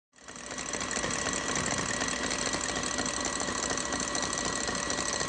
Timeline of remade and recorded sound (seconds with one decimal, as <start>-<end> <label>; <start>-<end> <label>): 0.0-5.3 recorded